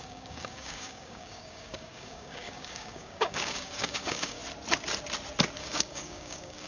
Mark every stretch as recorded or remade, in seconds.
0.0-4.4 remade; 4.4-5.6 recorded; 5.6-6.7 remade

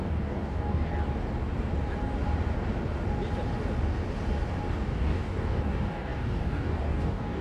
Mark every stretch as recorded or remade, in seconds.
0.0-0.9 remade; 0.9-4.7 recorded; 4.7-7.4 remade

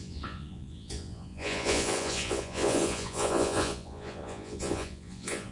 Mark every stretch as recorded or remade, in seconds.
0.0-5.5 remade

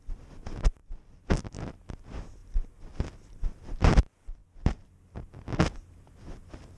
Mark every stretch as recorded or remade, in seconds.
0.0-6.8 recorded

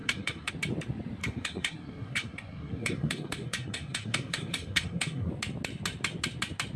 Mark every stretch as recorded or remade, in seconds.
0.0-0.5 remade; 0.5-1.2 recorded; 1.2-5.3 remade; 5.3-6.8 recorded

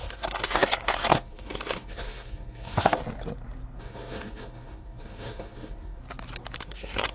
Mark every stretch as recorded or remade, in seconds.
0.0-3.0 remade; 3.0-3.8 recorded; 3.8-6.0 remade; 6.0-6.6 recorded; 6.6-7.1 remade

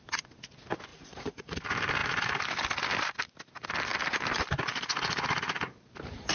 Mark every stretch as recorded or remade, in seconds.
0.0-0.9 recorded; 0.9-1.6 remade; 1.6-6.3 recorded